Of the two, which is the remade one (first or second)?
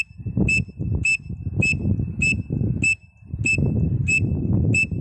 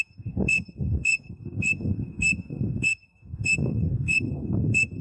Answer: second